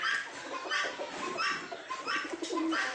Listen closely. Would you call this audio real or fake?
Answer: fake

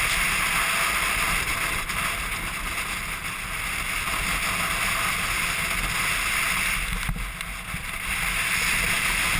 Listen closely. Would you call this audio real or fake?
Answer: real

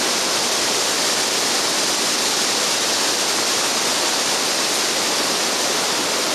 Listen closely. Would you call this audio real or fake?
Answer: real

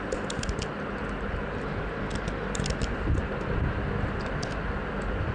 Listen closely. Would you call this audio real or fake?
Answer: real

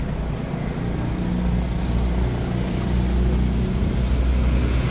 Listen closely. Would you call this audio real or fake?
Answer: real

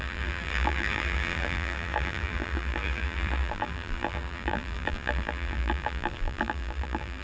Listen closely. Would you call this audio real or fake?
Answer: fake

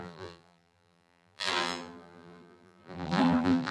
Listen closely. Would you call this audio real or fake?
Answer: fake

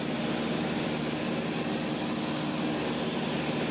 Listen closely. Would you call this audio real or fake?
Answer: real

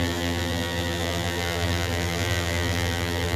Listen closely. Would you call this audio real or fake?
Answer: fake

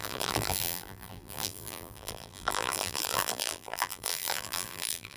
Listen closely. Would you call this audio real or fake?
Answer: fake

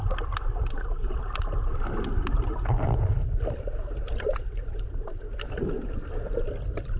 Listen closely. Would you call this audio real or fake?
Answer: real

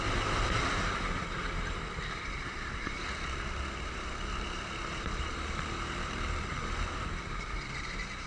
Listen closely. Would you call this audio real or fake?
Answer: fake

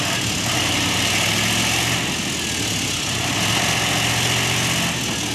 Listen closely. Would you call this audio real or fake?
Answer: real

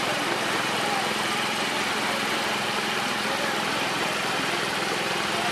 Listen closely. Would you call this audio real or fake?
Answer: fake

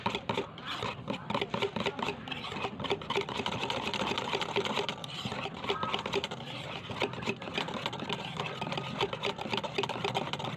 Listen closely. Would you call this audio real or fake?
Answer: fake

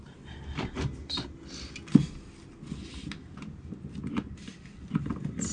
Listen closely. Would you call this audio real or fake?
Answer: real